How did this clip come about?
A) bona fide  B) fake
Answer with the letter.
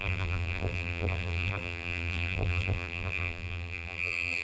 B